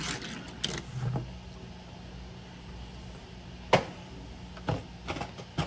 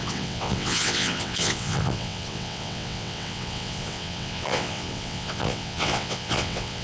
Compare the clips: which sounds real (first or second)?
first